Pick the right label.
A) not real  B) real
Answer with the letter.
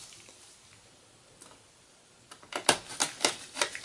B